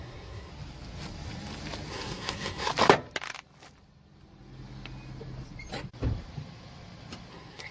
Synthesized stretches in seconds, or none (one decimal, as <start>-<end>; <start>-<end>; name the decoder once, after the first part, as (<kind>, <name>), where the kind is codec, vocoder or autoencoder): 0.0-0.5 (codec, SNAC); 1.9-2.7; 7.3-7.7